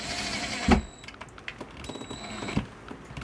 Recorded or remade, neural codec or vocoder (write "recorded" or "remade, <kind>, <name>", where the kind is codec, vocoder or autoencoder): recorded